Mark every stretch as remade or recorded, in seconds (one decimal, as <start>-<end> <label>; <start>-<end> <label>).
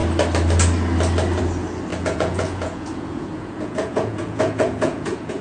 0.0-1.9 recorded; 1.9-5.4 remade